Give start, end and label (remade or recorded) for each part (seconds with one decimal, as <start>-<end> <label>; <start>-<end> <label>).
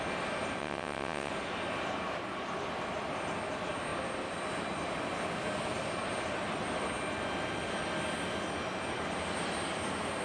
0.0-0.6 recorded; 0.6-1.3 remade; 1.3-10.2 recorded